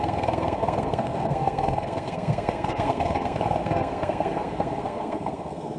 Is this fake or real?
fake